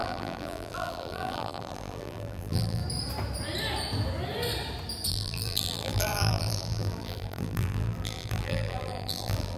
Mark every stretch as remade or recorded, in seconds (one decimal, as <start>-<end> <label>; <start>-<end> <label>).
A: 0.0-2.8 remade; 2.8-5.1 recorded; 5.1-9.6 remade